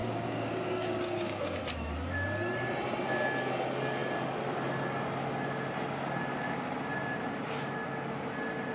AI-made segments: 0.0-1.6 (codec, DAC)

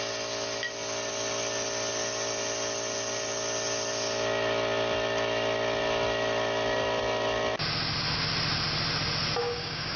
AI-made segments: 9.4-10.0 (codec, DAC)

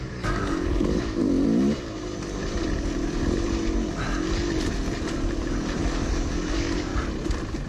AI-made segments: 0.0-1.2 (codec, DAC); 5.8-6.9

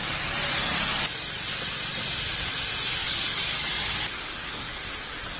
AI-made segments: 3.0-4.9 (codec, DAC)